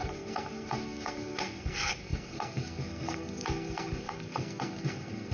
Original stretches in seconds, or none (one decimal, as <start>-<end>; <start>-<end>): none